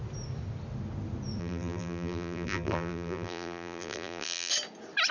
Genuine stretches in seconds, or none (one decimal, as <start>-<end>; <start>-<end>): 0.0-1.4; 4.5-5.1